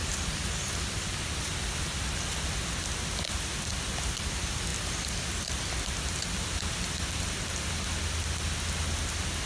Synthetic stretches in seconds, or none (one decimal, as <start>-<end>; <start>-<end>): 0.0-0.7